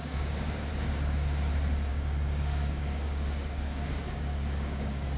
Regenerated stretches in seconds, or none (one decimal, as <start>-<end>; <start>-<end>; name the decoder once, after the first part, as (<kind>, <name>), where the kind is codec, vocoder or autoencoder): 0.0-0.7 (codec, DAC); 1.9-5.2